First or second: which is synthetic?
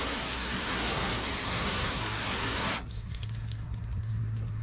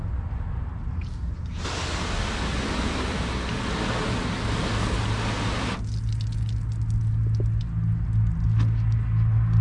first